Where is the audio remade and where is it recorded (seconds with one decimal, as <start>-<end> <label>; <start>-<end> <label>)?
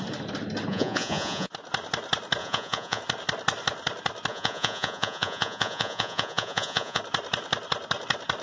0.0-0.7 recorded; 0.7-1.5 remade; 1.5-2.4 recorded; 2.4-3.0 remade; 3.0-4.3 recorded; 4.3-7.0 remade; 7.0-8.4 recorded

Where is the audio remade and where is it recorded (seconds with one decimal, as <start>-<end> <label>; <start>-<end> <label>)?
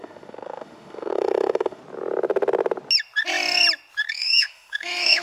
0.0-1.8 remade; 1.8-4.1 recorded; 4.1-5.2 remade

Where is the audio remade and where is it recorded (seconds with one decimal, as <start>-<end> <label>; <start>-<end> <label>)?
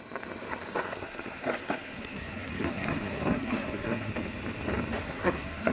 0.0-0.7 recorded; 0.7-4.1 remade; 4.1-5.0 recorded; 5.0-5.7 remade